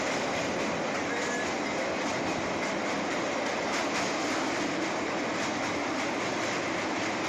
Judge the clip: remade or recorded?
recorded